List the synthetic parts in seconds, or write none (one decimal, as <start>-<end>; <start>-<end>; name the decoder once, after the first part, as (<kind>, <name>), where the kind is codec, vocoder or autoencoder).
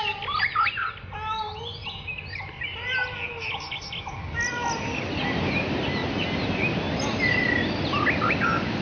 none